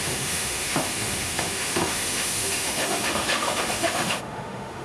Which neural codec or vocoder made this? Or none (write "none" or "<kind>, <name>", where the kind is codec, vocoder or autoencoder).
autoencoder, DAC-VAE